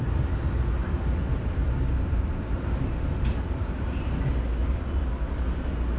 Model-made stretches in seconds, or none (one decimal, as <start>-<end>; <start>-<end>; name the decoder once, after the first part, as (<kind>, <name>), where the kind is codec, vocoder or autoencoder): 1.9-4.3 (vocoder, BigVGAN v2)

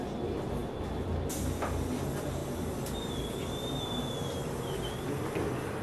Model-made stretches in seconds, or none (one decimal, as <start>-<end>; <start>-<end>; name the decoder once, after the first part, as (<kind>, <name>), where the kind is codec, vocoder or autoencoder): none

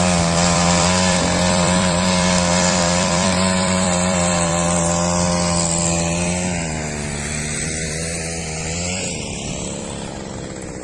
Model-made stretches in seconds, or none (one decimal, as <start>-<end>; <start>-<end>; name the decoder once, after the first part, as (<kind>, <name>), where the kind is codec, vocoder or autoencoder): 0.0-4.5 (vocoder, BigVGAN v2); 8.4-10.8

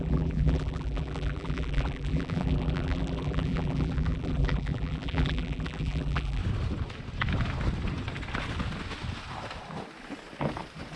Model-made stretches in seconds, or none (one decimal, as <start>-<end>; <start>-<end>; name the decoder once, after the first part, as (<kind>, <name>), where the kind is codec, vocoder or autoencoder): 0.0-6.4 (vocoder, BigVGAN v2)